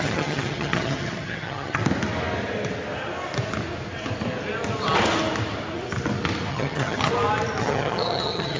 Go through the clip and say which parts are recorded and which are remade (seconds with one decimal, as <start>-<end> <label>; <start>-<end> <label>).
0.0-1.8 remade; 1.8-6.5 recorded; 6.5-7.1 remade; 7.1-7.6 recorded; 7.6-8.6 remade